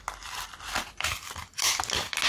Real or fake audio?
real